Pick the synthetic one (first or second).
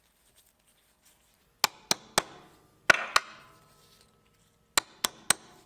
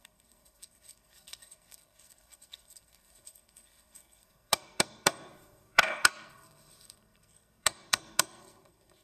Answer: second